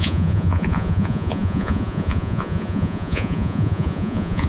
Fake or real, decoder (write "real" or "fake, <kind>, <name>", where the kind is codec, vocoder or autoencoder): fake, vocoder, Vocos